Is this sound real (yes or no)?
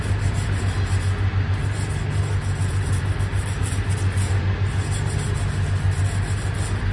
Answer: yes